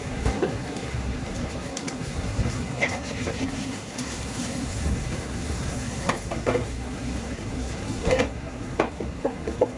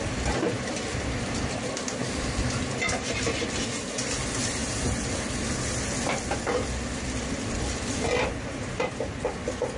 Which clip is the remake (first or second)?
first